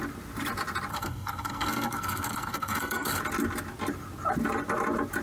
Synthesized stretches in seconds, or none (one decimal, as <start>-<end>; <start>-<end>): 0.9-3.2